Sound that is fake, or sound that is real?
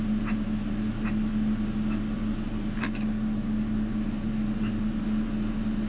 real